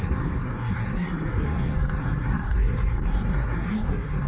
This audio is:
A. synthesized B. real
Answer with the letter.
A